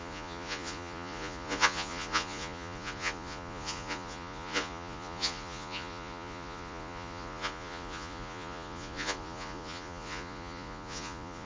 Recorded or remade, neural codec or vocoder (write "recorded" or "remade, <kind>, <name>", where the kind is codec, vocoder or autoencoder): remade, vocoder, Vocos